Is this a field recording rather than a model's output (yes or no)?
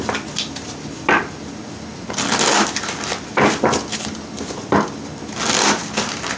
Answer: yes